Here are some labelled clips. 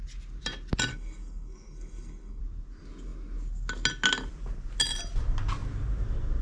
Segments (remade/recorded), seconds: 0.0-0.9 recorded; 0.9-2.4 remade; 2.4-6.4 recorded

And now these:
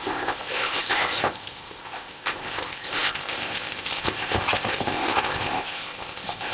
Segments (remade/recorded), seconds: 0.0-6.5 remade

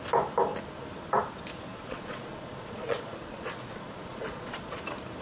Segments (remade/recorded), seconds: 0.0-1.7 recorded; 1.7-4.8 remade; 4.8-5.2 recorded

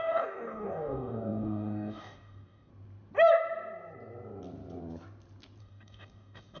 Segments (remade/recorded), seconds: 0.0-2.7 remade; 2.7-5.6 recorded; 5.6-6.6 remade

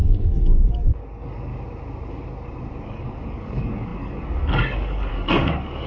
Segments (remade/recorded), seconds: 0.0-1.5 remade; 1.5-2.8 recorded; 2.8-5.9 remade

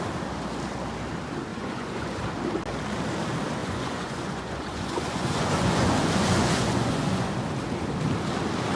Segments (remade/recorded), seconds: 0.0-1.5 recorded; 1.5-2.2 remade; 2.2-3.6 recorded; 3.6-7.3 remade; 7.3-8.8 recorded